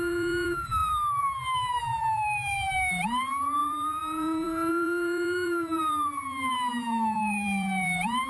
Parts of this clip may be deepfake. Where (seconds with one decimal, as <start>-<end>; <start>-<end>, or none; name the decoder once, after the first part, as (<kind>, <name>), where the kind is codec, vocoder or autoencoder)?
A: 0.0-8.3 (vocoder, BigVGAN v2)